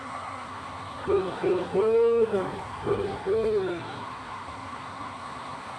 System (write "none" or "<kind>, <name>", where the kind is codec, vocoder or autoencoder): codec, SNAC